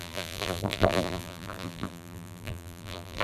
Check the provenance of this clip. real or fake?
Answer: fake